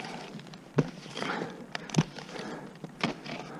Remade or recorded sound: remade